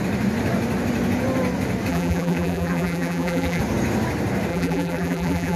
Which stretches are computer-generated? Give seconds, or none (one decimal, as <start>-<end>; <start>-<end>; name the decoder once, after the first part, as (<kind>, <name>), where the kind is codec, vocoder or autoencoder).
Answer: 1.9-3.6 (vocoder, BigVGAN v2); 4.5-5.6

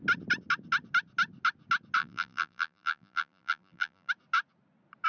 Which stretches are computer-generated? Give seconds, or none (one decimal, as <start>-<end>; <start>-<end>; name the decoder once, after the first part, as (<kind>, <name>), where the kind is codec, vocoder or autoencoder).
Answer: 2.0-4.1 (vocoder, BigVGAN v2)

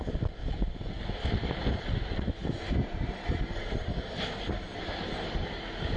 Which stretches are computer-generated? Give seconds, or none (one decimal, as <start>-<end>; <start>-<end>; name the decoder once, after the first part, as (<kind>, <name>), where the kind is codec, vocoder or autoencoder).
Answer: 2.4-5.6 (vocoder, BigVGAN v2)

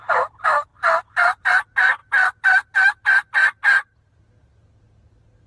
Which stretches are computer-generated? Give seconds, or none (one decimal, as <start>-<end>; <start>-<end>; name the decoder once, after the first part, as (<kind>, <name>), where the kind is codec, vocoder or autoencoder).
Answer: 2.0-4.7 (vocoder, BigVGAN v2)

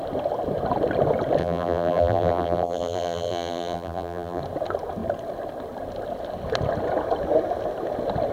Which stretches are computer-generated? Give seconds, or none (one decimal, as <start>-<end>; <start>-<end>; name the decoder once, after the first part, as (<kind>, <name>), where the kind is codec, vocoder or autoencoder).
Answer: 1.4-4.4 (vocoder, BigVGAN v2)